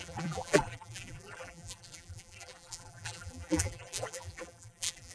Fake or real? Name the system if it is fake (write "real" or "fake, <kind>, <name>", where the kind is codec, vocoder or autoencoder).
fake, vocoder, BigVGAN v2